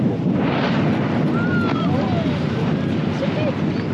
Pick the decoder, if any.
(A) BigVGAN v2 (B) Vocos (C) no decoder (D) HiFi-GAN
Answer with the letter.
C